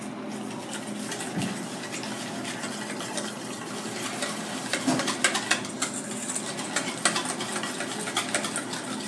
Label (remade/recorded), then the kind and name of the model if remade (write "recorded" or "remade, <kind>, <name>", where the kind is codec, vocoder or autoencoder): recorded